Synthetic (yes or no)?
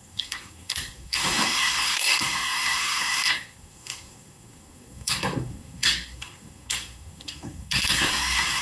yes